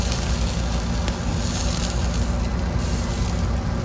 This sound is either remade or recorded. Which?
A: recorded